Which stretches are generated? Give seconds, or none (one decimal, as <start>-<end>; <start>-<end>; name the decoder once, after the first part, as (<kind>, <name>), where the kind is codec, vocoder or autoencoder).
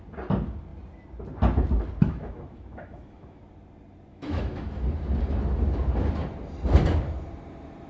2.0-3.4 (autoencoder, DAC-VAE); 4.1-4.7